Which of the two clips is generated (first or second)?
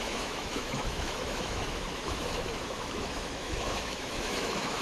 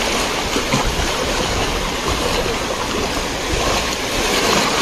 first